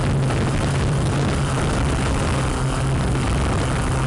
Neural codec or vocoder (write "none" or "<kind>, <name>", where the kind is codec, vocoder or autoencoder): none